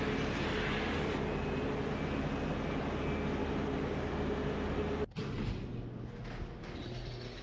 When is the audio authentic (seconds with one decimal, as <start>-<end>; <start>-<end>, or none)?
0.0-7.4